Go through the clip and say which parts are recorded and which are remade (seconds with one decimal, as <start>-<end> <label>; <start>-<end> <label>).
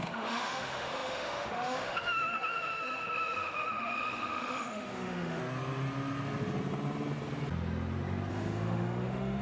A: 0.0-5.4 remade; 5.4-8.3 recorded; 8.3-9.4 remade